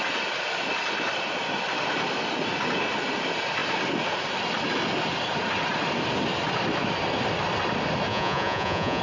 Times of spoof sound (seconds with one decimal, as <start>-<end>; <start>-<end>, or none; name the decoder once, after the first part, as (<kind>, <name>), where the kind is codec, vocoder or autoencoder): 8.1-9.0 (vocoder, Vocos)